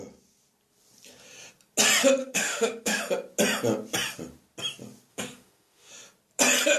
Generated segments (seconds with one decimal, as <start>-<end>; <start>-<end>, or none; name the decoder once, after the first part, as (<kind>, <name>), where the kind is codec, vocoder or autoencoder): 2.2-3.0 (autoencoder, DAC-VAE); 5.1-5.9